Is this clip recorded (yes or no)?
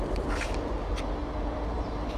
yes